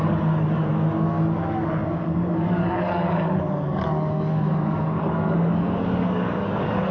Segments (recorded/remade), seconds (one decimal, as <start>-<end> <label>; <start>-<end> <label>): 0.0-0.7 remade; 0.7-1.4 recorded; 1.4-6.9 remade